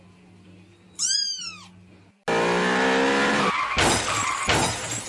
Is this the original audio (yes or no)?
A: yes